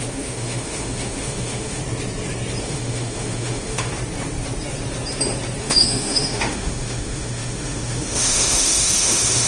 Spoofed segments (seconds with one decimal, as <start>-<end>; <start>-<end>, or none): 0.0-1.8; 2.6-3.9; 5.6-9.5